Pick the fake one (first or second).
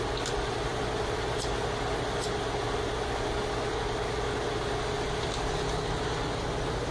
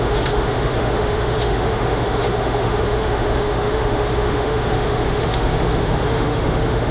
second